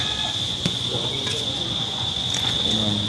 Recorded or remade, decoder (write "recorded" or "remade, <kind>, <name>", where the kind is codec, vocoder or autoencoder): remade, vocoder, Vocos